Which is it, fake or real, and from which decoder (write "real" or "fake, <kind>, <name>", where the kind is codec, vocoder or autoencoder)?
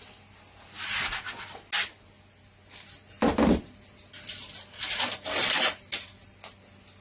real